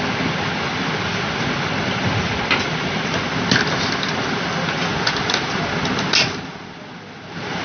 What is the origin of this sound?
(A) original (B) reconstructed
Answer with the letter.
A